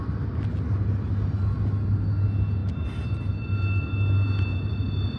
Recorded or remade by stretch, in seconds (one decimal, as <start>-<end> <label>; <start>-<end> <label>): 0.0-5.2 recorded

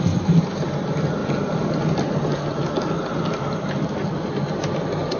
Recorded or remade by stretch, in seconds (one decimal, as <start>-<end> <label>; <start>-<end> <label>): 0.0-5.2 recorded

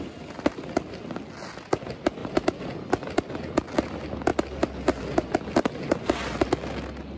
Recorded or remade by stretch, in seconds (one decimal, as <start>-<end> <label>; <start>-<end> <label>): 0.0-7.2 recorded

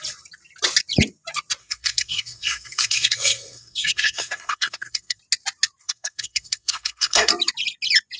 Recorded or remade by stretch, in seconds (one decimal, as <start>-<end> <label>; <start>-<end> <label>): 0.0-1.6 recorded; 1.6-5.2 remade; 5.2-5.8 recorded; 5.8-7.3 remade; 7.3-8.2 recorded